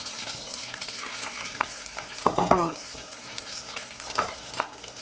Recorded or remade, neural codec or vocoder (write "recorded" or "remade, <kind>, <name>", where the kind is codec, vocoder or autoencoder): remade, codec, SNAC